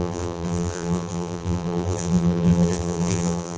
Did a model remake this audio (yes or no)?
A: yes